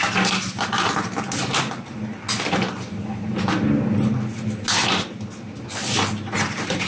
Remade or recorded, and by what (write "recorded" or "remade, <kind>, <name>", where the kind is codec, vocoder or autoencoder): recorded